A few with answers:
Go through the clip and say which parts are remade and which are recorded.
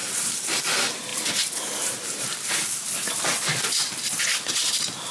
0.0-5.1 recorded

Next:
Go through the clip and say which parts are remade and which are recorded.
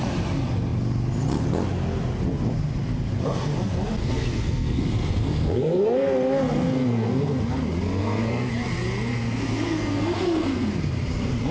0.0-4.0 recorded; 4.0-7.4 remade; 7.4-8.0 recorded; 8.0-8.5 remade; 8.5-9.1 recorded; 9.1-10.7 remade; 10.7-11.5 recorded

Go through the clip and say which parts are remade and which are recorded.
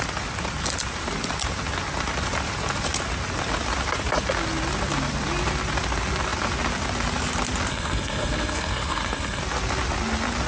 0.0-7.7 recorded; 7.7-9.4 remade; 9.4-10.5 recorded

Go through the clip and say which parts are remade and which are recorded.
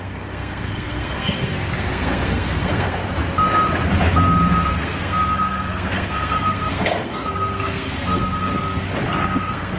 0.0-3.0 remade; 3.0-4.7 recorded; 4.7-8.5 remade; 8.5-9.2 recorded; 9.2-9.8 remade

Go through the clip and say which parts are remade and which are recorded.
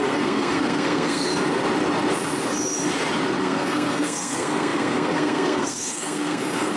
0.0-1.3 remade; 1.3-3.4 recorded; 3.4-6.8 remade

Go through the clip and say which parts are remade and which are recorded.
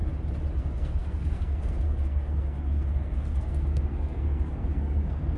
0.0-0.6 recorded; 0.6-5.4 remade